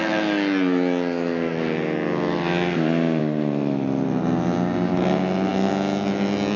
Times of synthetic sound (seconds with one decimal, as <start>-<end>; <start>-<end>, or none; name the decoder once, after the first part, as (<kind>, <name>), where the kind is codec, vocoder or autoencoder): none